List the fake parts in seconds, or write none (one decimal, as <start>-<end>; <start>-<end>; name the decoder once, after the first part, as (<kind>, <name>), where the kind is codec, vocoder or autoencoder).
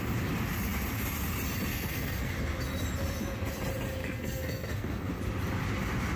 1.7-2.3 (codec, SNAC); 4.0-5.2